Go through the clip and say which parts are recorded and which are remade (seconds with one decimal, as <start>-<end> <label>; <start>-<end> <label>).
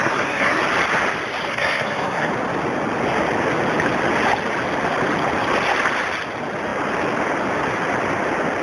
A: 0.0-0.6 remade; 0.6-1.5 recorded; 1.5-2.3 remade; 2.3-8.6 recorded